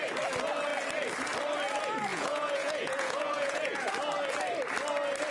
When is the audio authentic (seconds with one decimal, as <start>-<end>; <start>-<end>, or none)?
0.0-2.1; 3.9-5.3